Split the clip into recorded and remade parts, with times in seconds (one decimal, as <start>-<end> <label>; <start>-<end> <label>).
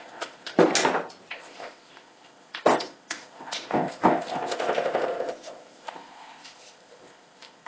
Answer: 0.0-0.5 remade; 0.5-1.3 recorded; 1.3-7.7 remade